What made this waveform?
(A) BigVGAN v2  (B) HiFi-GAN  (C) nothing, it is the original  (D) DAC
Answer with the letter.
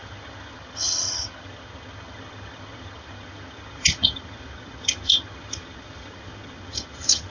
B